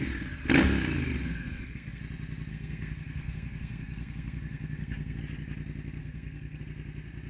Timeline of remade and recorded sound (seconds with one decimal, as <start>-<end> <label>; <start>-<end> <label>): 0.0-1.2 recorded; 1.2-2.0 remade; 2.0-2.5 recorded; 2.5-5.2 remade; 5.2-6.0 recorded; 6.0-6.6 remade; 6.6-7.3 recorded